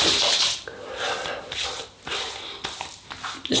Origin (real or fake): real